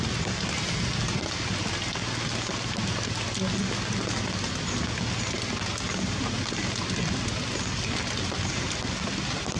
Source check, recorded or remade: recorded